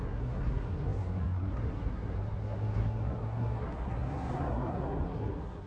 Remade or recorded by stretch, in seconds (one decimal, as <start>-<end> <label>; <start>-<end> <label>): 0.0-5.7 remade